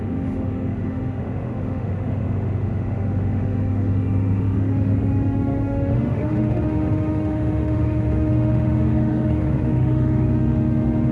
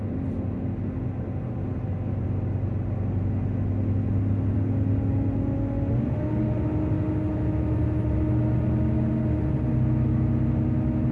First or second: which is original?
second